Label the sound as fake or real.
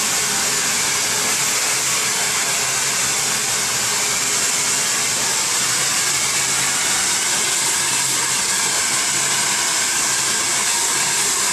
real